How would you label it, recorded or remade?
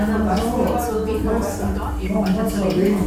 recorded